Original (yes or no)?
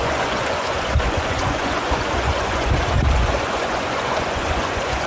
no